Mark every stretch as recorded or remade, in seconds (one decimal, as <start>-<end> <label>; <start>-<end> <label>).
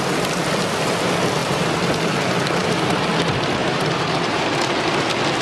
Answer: 0.0-1.4 recorded; 1.4-1.9 remade; 1.9-3.6 recorded; 3.6-4.4 remade; 4.4-5.4 recorded